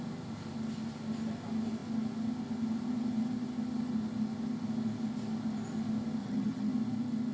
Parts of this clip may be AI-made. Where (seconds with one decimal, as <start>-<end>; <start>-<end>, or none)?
6.2-6.7